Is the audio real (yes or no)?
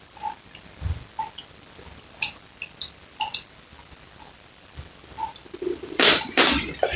yes